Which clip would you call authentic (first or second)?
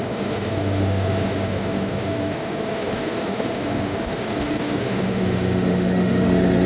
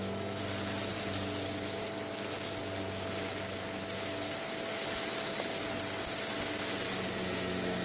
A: second